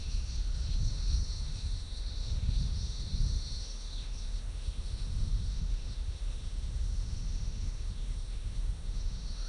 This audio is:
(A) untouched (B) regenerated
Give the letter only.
B